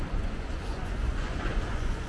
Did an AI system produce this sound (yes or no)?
yes